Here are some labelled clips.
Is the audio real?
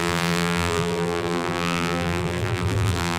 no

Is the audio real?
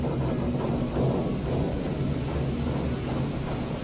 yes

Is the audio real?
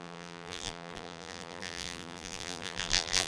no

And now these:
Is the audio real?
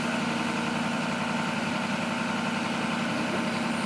yes